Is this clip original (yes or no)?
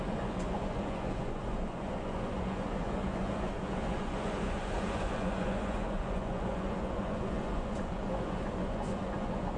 no